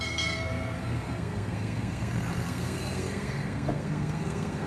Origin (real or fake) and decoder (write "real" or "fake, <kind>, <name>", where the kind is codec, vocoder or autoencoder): fake, codec, SNAC